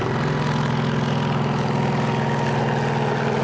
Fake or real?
real